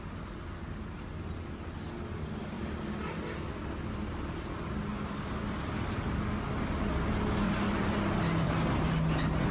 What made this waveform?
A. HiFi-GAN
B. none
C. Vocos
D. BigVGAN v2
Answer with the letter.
B